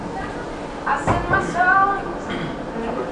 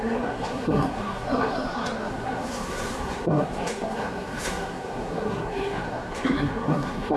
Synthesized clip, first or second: second